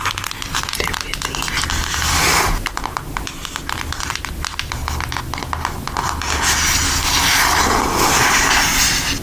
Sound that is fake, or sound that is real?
real